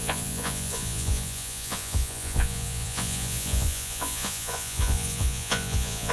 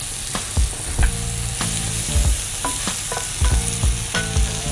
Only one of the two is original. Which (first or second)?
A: second